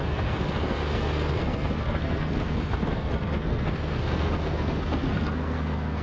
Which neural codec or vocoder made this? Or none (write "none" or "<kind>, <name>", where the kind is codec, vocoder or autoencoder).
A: codec, SNAC